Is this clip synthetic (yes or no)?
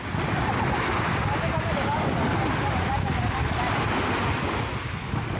no